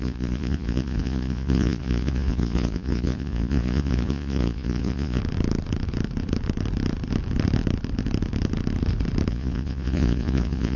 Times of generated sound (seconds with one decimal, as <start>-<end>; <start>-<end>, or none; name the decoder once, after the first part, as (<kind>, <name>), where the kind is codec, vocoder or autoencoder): 0.0-5.2 (vocoder, Vocos); 9.3-10.8